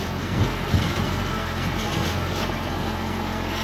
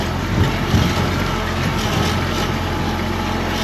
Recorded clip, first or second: second